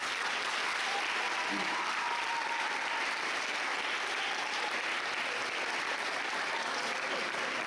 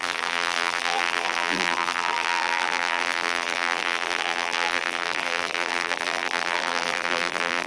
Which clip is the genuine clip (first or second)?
first